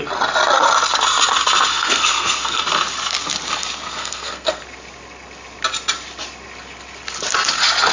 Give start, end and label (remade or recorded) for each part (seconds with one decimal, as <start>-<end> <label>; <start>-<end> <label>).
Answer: 0.0-1.7 recorded; 1.7-2.6 remade; 2.6-4.0 recorded; 4.0-4.6 remade; 4.6-7.9 recorded